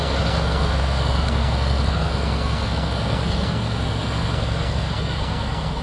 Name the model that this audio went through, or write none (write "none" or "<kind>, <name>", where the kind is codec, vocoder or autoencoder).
codec, SNAC